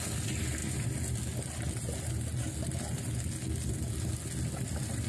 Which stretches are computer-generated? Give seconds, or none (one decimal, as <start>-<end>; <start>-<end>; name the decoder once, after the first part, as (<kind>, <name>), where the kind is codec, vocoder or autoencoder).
none